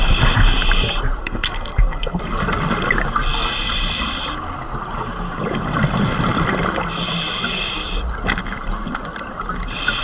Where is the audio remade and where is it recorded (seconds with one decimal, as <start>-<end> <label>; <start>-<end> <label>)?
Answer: 0.0-1.2 recorded; 1.2-2.2 remade; 2.2-10.0 recorded